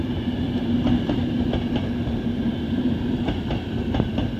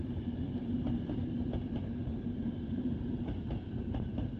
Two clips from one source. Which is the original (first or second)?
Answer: first